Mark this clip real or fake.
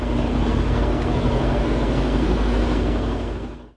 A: fake